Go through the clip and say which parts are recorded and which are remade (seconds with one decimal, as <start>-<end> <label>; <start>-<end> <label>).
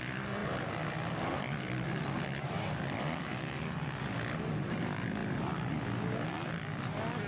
0.0-0.4 recorded; 0.4-3.2 remade; 3.2-5.2 recorded; 5.2-7.3 remade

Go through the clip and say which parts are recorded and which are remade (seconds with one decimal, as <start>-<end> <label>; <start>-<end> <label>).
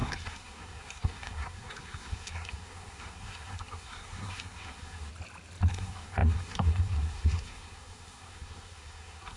0.0-5.1 remade; 5.1-5.7 recorded; 5.7-9.4 remade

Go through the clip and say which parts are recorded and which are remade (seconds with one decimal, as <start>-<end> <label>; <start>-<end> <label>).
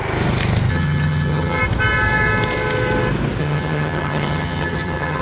0.0-0.7 recorded; 0.7-1.6 remade; 1.6-3.4 recorded; 3.4-5.2 remade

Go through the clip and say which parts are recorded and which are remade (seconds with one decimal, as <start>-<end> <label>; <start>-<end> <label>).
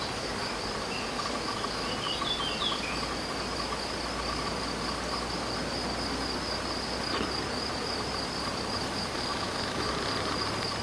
0.0-9.3 recorded; 9.3-9.9 remade; 9.9-10.8 recorded